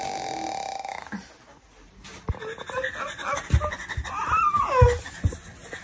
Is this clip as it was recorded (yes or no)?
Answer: yes